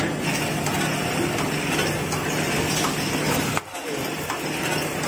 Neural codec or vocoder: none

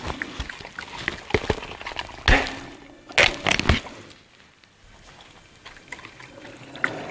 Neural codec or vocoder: none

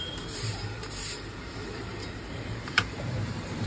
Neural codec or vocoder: vocoder, BigVGAN v2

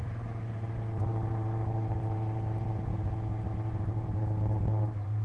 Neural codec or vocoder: vocoder, BigVGAN v2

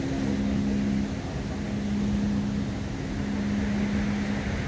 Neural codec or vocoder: none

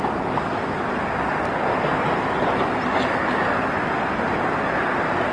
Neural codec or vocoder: none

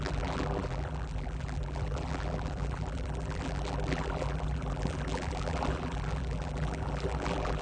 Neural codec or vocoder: vocoder, BigVGAN v2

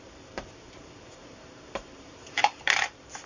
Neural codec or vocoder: vocoder, BigVGAN v2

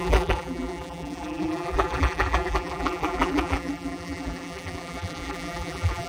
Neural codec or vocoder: vocoder, BigVGAN v2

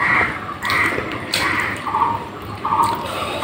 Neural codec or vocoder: vocoder, BigVGAN v2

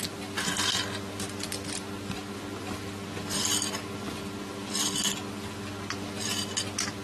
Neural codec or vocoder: none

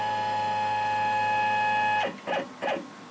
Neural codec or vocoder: none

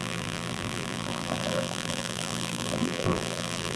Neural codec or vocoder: vocoder, BigVGAN v2